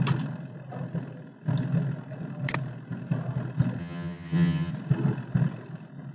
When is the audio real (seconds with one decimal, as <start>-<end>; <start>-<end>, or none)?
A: 0.0-3.8; 4.7-6.1